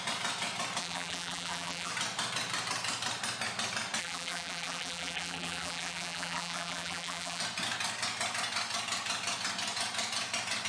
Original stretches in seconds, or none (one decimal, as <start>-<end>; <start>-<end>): 0.0-0.8; 1.9-4.0; 7.4-10.7